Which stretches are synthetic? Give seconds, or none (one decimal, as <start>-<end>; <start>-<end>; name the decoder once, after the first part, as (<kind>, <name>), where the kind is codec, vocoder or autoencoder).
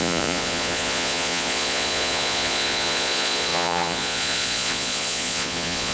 0.0-5.9 (vocoder, Vocos)